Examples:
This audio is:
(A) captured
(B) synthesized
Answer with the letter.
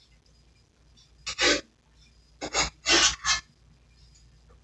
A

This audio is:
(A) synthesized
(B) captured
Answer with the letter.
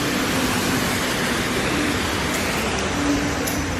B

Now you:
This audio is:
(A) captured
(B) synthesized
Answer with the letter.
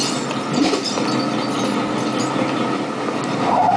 A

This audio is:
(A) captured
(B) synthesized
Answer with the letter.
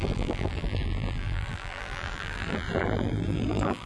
B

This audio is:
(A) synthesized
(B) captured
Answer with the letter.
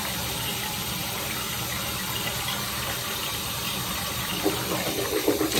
A